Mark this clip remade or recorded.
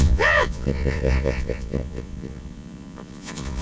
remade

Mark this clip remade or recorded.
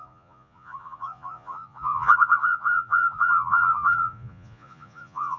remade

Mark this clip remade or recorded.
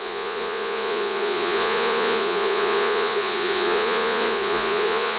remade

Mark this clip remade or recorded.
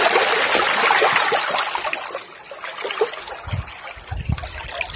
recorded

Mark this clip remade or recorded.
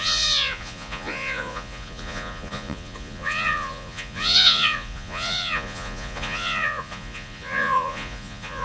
remade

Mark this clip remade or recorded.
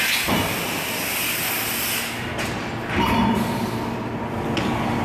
recorded